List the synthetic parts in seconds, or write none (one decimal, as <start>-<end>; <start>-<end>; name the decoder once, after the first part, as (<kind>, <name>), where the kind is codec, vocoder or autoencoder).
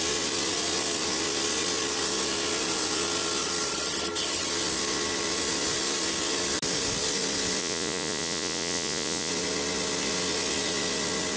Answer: 7.6-9.3 (vocoder, Vocos)